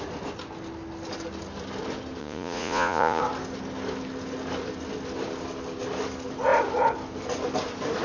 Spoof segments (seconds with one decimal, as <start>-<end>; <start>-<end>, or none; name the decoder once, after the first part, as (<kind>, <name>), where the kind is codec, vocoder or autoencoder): 2.2-3.2 (vocoder, Vocos)